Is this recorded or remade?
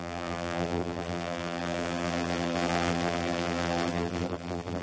remade